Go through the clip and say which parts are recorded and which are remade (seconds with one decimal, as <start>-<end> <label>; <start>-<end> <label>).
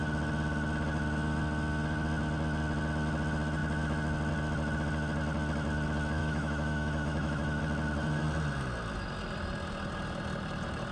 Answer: 0.0-6.2 recorded; 6.2-7.6 remade; 7.6-10.9 recorded